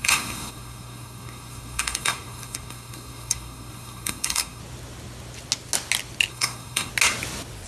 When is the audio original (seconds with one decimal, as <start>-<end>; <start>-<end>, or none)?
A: 4.6-6.3; 6.9-7.7